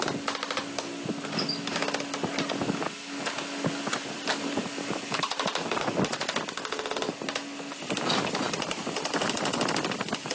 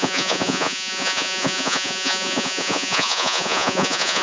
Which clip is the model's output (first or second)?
second